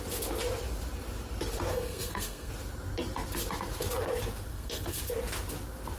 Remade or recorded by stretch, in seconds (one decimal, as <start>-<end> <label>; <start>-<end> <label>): 0.0-1.7 recorded; 1.7-2.5 remade; 2.5-4.5 recorded; 4.5-5.1 remade; 5.1-6.0 recorded